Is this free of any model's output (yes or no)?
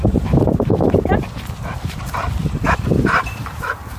no